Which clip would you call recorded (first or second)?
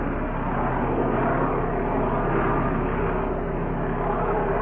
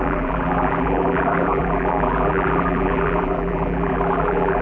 first